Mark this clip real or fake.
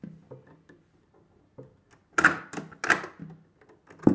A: real